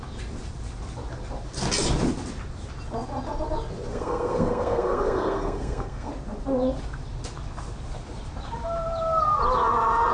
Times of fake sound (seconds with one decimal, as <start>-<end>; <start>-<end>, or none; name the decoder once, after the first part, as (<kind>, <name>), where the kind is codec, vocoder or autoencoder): 3.9-6.1 (codec, SNAC)